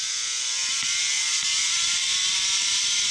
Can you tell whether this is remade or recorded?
recorded